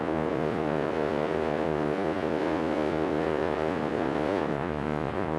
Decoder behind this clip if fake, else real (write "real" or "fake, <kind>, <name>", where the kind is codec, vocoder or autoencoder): fake, vocoder, Vocos